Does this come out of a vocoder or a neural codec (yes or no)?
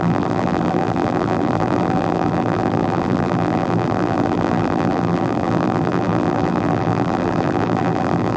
yes